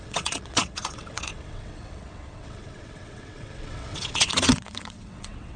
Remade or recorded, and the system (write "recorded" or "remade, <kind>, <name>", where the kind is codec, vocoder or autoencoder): remade, vocoder, WaveNeXt